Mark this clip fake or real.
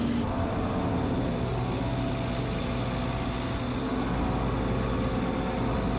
real